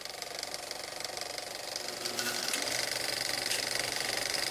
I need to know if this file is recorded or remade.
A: remade